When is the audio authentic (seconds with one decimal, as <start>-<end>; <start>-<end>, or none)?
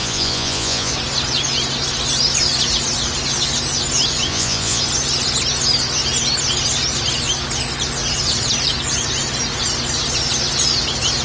0.9-4.3; 4.8-11.2